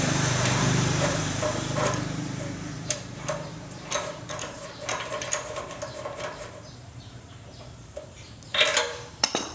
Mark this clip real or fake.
fake